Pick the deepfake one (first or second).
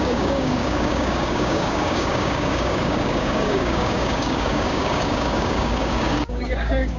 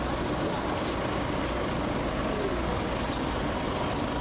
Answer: first